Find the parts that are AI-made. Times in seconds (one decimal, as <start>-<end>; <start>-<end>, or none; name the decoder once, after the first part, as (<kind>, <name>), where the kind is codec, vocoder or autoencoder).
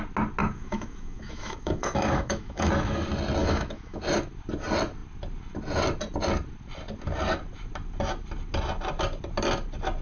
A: 0.4-2.7 (autoencoder, DAC-VAE); 3.4-4.0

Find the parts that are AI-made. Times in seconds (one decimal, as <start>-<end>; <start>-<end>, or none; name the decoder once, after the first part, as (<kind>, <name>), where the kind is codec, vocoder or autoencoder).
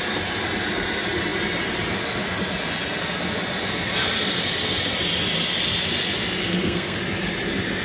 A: 6.4-7.0 (codec, SNAC)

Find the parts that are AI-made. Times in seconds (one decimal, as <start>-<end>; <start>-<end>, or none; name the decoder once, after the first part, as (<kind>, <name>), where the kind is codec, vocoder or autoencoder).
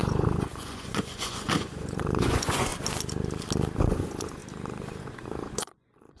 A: 0.0-2.7 (vocoder, Vocos); 3.8-4.4; 5.0-6.2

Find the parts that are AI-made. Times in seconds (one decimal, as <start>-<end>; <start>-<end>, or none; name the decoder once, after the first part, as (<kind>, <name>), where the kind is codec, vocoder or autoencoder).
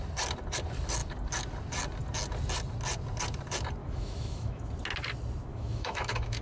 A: 3.8-4.7 (autoencoder, DAC-VAE); 5.5-6.4